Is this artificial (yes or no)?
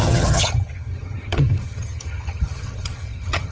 yes